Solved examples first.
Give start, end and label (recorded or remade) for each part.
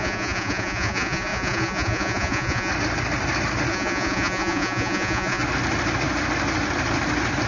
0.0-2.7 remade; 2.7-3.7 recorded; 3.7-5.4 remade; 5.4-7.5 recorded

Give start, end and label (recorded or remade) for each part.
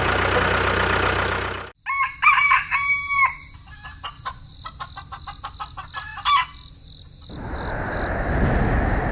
0.0-9.1 recorded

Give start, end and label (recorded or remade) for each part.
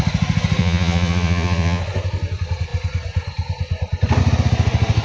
0.0-0.6 recorded; 0.6-1.8 remade; 1.8-5.0 recorded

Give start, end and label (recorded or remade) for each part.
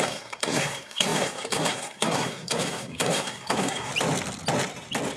0.0-3.9 remade; 3.9-5.2 recorded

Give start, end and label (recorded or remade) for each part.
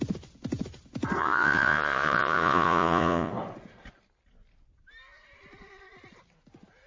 0.0-1.2 recorded; 1.2-3.3 remade; 3.3-6.9 recorded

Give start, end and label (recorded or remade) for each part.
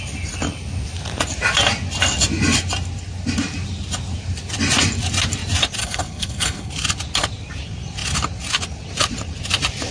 0.0-5.8 recorded; 5.8-6.7 remade; 6.7-9.9 recorded